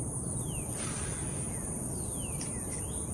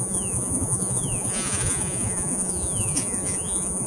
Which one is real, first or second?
first